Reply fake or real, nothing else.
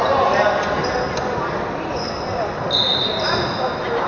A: real